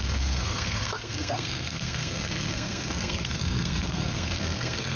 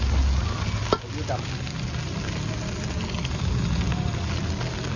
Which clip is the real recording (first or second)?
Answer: second